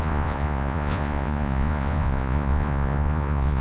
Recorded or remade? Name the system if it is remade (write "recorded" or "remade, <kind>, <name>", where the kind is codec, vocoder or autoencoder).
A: remade, vocoder, Vocos